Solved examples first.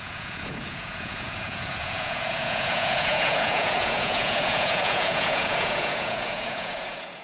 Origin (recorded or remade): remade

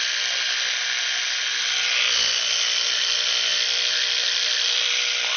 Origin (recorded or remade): recorded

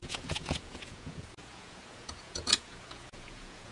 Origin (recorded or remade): remade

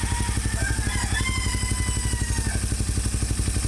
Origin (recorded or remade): recorded